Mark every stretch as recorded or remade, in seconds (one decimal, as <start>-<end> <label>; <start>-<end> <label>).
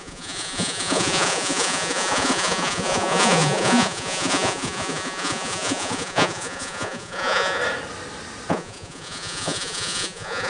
0.0-7.6 remade; 7.6-8.5 recorded; 8.5-10.5 remade